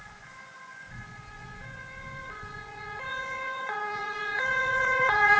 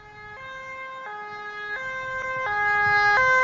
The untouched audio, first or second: second